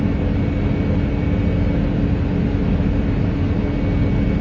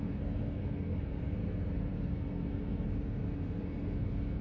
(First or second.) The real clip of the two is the first